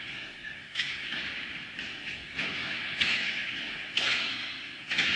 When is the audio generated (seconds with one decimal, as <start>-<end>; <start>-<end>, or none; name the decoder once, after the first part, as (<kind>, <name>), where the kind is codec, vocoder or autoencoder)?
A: 0.0-1.2 (codec, SNAC); 1.9-5.2